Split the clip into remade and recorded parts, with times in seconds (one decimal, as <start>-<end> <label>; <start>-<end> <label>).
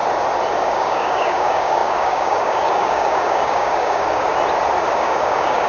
0.0-0.6 recorded; 0.6-4.3 remade; 4.3-4.9 recorded; 4.9-5.7 remade